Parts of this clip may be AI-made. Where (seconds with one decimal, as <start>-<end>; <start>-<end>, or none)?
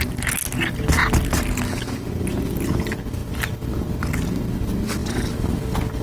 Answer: 5.0-5.6